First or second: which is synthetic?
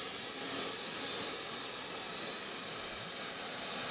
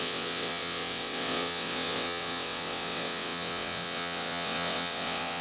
second